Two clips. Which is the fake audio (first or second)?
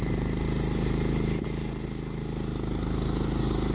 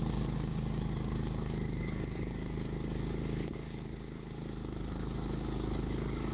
second